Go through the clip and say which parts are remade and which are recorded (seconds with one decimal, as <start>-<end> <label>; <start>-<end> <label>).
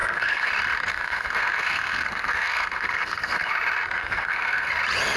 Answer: 0.0-0.5 remade; 0.5-0.9 recorded; 0.9-3.5 remade; 3.5-4.0 recorded; 4.0-4.7 remade; 4.7-5.2 recorded